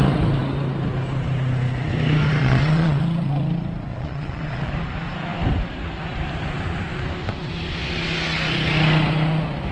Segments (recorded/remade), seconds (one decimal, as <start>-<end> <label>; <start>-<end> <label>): 0.0-2.4 recorded; 2.4-3.0 remade; 3.0-3.9 recorded; 3.9-4.7 remade; 4.7-9.7 recorded

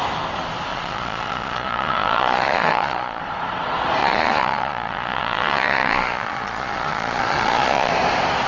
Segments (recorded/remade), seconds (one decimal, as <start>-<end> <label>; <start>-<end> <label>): 0.0-0.7 recorded; 0.7-3.2 remade; 3.2-4.0 recorded; 4.0-7.9 remade; 7.9-8.5 recorded

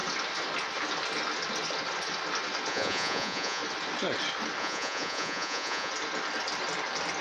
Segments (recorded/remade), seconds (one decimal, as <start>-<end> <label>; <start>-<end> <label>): 0.0-2.7 recorded; 2.7-3.6 remade; 3.6-4.6 recorded; 4.6-5.9 remade; 5.9-7.2 recorded

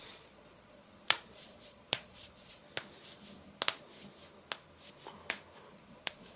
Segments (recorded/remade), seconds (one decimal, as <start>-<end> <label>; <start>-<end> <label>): 0.0-2.6 remade; 2.6-5.7 recorded; 5.7-6.4 remade

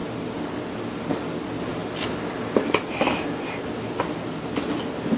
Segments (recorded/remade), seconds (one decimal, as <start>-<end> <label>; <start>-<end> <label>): 0.0-5.2 recorded

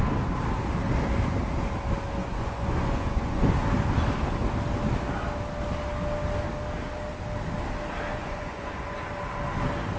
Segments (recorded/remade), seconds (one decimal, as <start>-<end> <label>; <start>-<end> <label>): 0.0-2.2 recorded; 2.2-3.4 remade; 3.4-8.1 recorded; 8.1-9.0 remade; 9.0-10.0 recorded

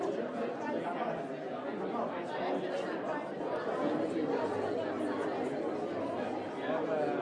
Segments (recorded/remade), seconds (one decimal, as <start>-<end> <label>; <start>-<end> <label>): 0.0-7.2 recorded

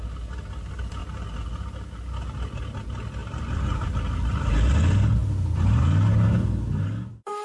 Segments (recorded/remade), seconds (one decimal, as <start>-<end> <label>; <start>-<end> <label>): 0.0-7.4 recorded